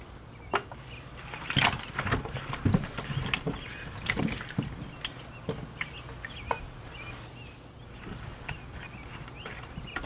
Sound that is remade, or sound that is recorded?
recorded